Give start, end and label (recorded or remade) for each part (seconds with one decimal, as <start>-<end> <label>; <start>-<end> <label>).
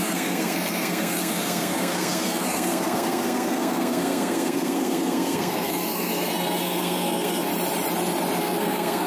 0.0-7.5 remade; 7.5-8.4 recorded; 8.4-9.1 remade